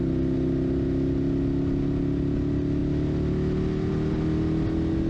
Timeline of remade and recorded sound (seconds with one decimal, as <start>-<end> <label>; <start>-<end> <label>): 0.0-5.1 recorded